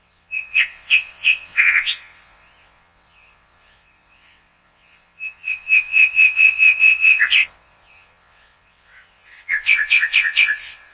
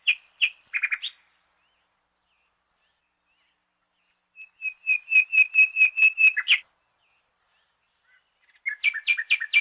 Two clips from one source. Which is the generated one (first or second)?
first